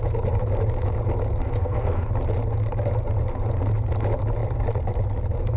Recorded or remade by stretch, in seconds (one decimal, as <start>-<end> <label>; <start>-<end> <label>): 0.0-1.4 recorded; 1.4-2.1 remade; 2.1-5.6 recorded